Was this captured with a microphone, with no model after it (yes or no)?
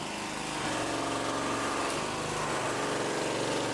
yes